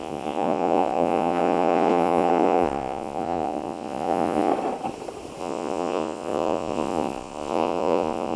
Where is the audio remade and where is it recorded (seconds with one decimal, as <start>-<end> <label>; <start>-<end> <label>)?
0.0-4.5 remade; 4.5-5.4 recorded; 5.4-8.4 remade